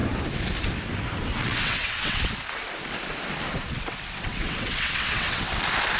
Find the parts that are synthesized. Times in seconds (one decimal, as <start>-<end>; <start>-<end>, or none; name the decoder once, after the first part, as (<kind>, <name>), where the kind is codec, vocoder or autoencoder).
1.3-2.3 (vocoder, WaveNeXt); 3.7-5.5